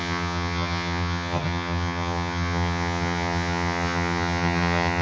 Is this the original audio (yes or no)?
no